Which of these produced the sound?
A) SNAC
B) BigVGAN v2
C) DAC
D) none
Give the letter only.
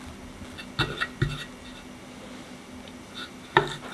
D